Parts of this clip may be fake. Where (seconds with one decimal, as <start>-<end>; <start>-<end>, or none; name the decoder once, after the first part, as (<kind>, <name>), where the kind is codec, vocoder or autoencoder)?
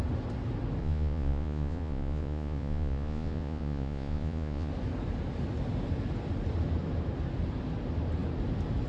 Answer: 0.8-4.7 (vocoder, Vocos)